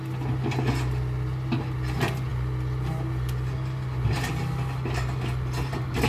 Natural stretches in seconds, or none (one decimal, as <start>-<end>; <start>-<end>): 0.0-6.1

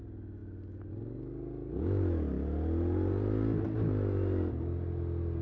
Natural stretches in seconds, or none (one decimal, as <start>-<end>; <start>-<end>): 0.0-5.4

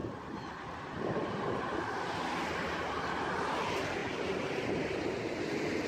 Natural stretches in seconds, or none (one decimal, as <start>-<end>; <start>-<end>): 1.8-5.9

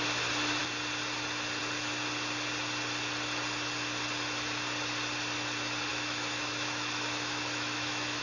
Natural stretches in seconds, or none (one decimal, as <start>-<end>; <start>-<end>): 0.0-5.9